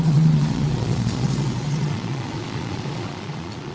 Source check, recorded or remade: remade